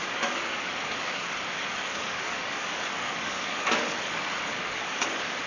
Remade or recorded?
remade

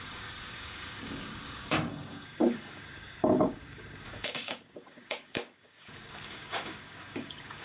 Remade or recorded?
remade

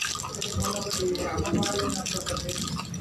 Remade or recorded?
recorded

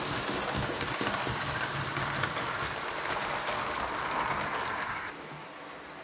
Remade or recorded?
recorded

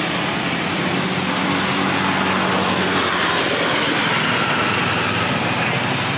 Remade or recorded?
recorded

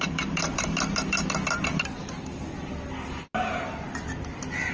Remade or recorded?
recorded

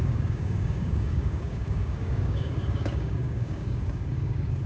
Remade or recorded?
remade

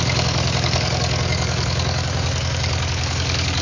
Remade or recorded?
remade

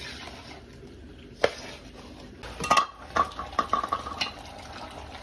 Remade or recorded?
recorded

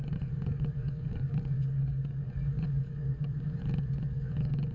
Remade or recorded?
remade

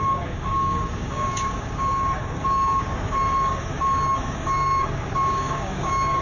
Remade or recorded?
remade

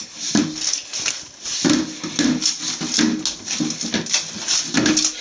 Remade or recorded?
recorded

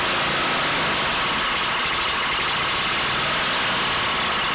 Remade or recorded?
recorded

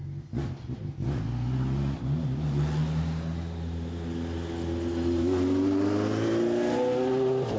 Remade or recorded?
recorded